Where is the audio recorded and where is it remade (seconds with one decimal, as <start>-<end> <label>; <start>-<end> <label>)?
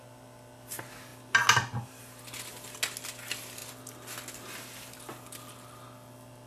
0.0-6.5 recorded